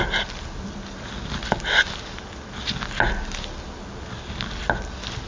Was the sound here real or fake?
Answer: real